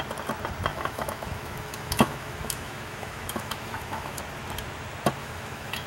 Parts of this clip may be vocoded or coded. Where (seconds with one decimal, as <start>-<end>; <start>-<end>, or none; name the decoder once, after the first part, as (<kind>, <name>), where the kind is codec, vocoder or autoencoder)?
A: 0.7-4.2 (autoencoder, DAC-VAE); 5.2-5.9